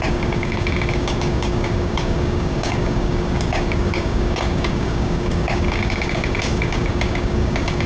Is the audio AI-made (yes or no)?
yes